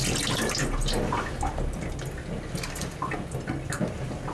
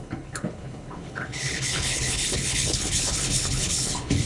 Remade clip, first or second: second